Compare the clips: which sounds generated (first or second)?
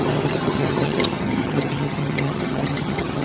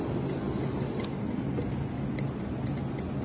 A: first